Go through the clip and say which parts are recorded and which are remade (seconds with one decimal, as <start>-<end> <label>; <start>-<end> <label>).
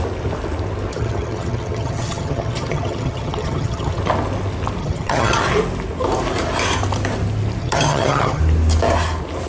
0.0-0.9 recorded; 0.9-4.0 remade; 4.0-4.8 recorded; 4.8-5.4 remade; 5.4-7.6 recorded; 7.6-8.4 remade; 8.4-9.5 recorded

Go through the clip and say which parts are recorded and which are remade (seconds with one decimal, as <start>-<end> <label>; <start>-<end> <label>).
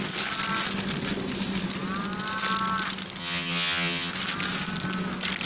0.0-3.2 recorded; 3.2-4.1 remade; 4.1-5.5 recorded